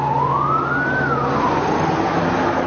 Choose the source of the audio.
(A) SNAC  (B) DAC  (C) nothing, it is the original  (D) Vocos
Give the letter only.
C